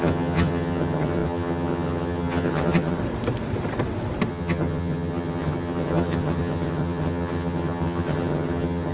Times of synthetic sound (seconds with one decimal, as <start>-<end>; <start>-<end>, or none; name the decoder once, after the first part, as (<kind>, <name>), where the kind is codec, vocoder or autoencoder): 0.0-3.0 (vocoder, HiFi-GAN); 4.3-8.9